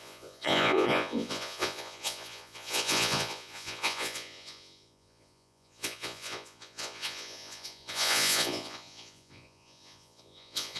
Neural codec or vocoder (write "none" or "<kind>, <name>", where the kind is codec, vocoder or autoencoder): vocoder, Vocos